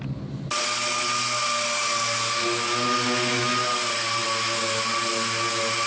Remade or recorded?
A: recorded